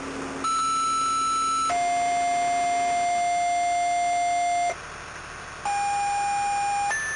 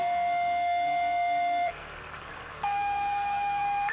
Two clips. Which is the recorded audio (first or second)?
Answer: first